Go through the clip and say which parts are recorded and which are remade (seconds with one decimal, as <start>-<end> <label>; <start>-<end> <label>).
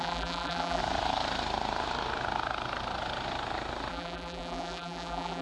0.0-0.8 remade; 0.8-3.9 recorded; 3.9-5.4 remade